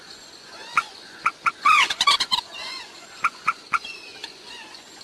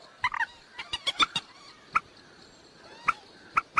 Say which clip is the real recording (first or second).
second